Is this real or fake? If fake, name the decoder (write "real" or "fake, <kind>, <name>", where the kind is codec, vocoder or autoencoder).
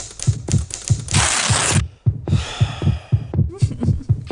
real